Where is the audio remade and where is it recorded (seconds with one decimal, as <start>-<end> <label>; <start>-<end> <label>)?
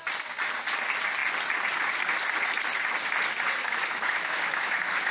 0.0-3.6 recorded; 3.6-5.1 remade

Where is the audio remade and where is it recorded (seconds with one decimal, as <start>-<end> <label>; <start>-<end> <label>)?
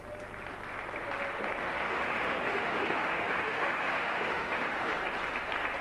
0.0-1.6 recorded; 1.6-4.9 remade; 4.9-5.8 recorded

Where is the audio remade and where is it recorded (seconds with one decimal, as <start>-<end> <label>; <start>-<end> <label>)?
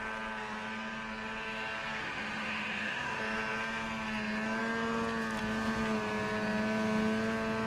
0.0-2.0 recorded; 2.0-3.2 remade; 3.2-7.7 recorded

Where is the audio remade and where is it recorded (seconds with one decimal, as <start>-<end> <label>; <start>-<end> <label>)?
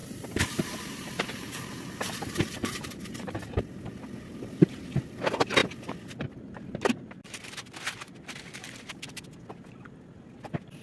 0.0-3.6 remade; 3.6-10.8 recorded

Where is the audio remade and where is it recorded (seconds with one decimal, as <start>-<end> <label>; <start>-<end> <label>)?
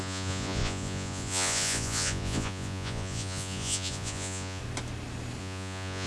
0.0-4.6 remade; 4.6-5.4 recorded; 5.4-6.1 remade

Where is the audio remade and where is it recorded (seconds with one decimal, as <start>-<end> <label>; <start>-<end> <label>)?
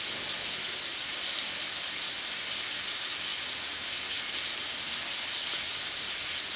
0.0-6.6 recorded